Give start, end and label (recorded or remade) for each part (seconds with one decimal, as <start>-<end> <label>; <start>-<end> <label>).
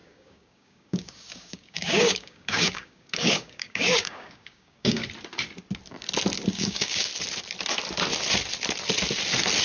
0.0-5.0 remade; 5.0-6.5 recorded; 6.5-7.1 remade; 7.1-9.6 recorded